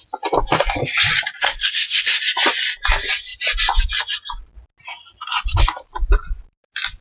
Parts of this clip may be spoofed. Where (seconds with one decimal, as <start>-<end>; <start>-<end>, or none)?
1.4-2.2

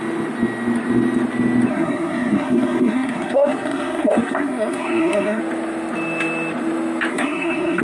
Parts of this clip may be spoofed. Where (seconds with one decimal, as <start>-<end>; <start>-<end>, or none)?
1.7-5.4; 7.1-7.8

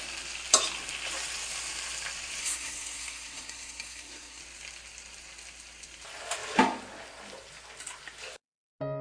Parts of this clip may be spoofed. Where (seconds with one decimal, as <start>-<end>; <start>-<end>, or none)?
2.4-4.4

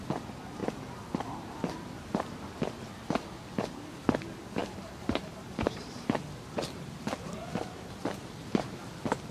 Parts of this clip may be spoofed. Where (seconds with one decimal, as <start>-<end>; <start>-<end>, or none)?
none

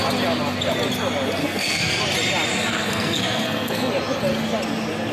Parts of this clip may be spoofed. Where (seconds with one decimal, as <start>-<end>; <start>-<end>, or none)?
1.4-2.0; 2.7-3.9